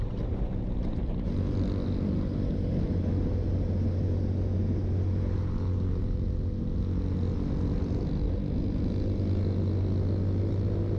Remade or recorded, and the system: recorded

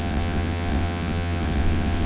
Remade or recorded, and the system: remade, vocoder, WaveNeXt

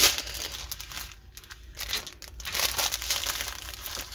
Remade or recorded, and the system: recorded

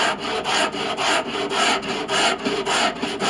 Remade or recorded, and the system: recorded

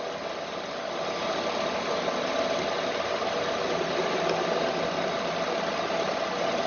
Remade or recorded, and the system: recorded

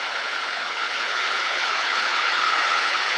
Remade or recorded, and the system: remade, codec, HILCodec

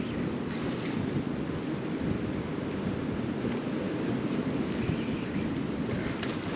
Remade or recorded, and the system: recorded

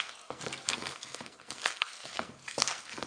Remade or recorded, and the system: remade, codec, SNAC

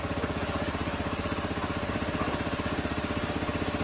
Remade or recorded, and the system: recorded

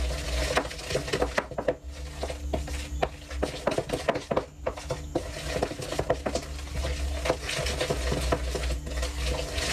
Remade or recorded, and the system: recorded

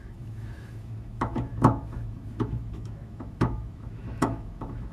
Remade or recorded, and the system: remade, autoencoder, DAC-VAE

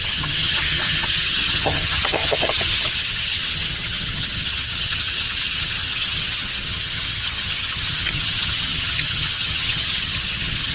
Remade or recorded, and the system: remade, vocoder, HiFi-GAN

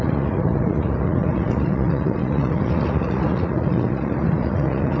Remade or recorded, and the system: remade, vocoder, Vocos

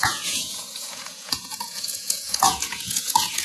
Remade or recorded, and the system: remade, vocoder, Vocos